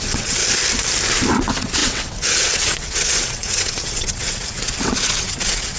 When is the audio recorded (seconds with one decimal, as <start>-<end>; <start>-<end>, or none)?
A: 0.4-1.3